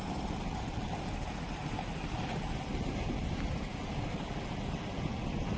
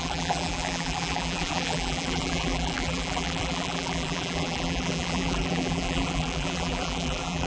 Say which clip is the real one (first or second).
first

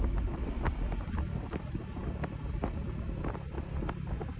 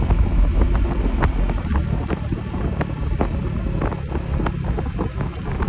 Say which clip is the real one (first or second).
second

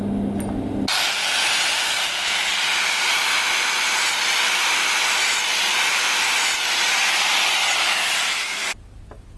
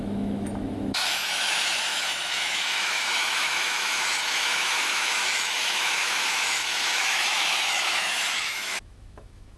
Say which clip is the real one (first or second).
first